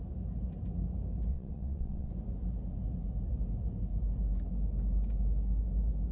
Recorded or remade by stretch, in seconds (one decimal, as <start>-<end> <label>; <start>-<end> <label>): 0.0-1.3 recorded; 1.3-2.1 remade; 2.1-6.1 recorded